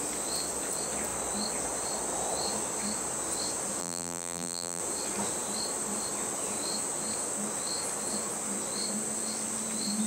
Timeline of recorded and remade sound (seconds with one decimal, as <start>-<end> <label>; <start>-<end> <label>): 0.0-3.8 recorded; 3.8-4.8 remade; 4.8-10.1 recorded